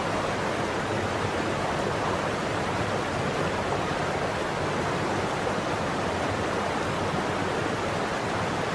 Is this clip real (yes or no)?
yes